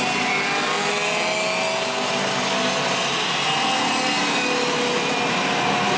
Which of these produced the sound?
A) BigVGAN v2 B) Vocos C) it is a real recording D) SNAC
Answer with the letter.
C